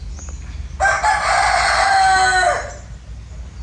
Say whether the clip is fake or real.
real